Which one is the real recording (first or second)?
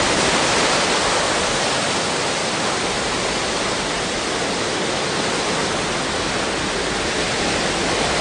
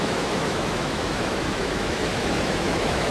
first